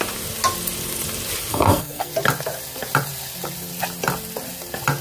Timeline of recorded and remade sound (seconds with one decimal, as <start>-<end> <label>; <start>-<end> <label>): 0.0-1.5 recorded; 1.5-2.1 remade; 2.1-5.0 recorded